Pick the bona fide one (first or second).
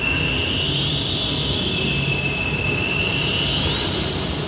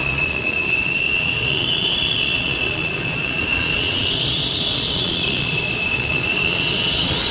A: first